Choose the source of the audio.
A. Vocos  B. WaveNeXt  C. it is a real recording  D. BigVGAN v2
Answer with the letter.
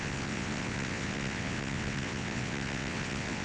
B